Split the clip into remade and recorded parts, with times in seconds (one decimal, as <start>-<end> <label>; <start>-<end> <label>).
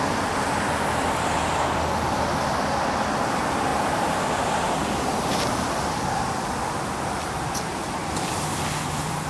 0.0-3.7 recorded; 3.7-6.2 remade; 6.2-8.0 recorded; 8.0-9.3 remade